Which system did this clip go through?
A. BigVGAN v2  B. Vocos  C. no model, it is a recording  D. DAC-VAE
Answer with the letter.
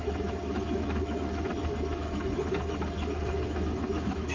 D